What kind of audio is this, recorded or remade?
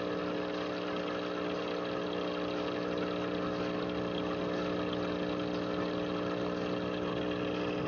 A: recorded